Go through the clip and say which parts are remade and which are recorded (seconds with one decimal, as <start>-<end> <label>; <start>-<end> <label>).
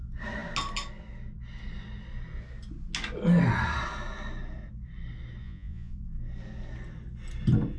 0.0-5.4 recorded; 5.4-6.0 remade; 6.0-7.8 recorded